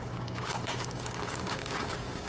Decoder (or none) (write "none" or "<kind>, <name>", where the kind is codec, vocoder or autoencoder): codec, DAC